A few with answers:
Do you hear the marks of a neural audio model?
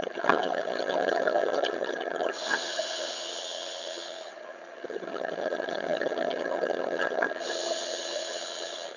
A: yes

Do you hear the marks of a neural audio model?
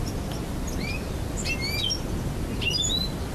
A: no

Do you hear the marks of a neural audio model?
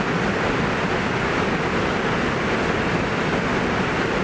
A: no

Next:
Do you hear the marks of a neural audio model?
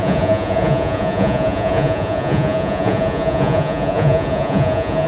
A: yes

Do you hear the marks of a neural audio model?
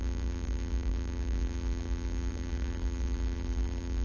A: yes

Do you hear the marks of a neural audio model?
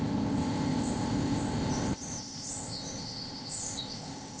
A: yes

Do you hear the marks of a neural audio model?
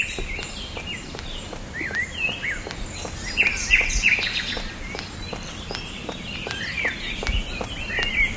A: no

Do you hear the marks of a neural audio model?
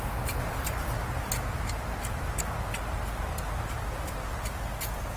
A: no